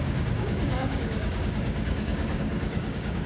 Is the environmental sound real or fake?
fake